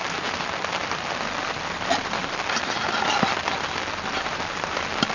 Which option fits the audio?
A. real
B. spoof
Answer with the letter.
A